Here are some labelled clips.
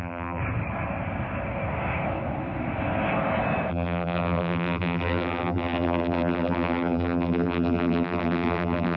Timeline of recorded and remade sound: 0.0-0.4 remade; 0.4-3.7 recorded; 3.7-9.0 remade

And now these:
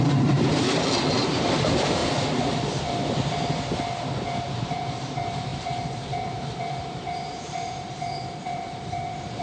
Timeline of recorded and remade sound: 0.0-0.5 remade; 0.5-1.3 recorded; 1.3-2.0 remade; 2.0-4.5 recorded; 4.5-9.4 remade